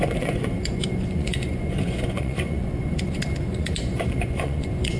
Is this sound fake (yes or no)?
yes